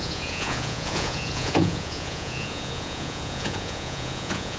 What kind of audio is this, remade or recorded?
remade